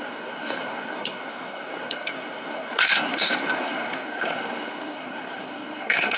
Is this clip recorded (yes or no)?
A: no